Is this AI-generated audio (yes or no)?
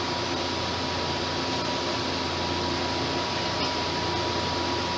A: no